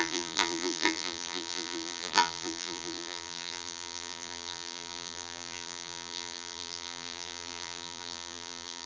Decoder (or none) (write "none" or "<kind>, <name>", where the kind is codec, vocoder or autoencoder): vocoder, BigVGAN v2